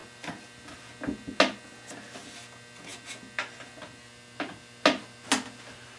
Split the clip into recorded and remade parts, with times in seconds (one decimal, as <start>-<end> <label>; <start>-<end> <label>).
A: 0.0-6.0 recorded